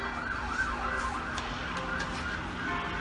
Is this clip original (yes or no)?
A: yes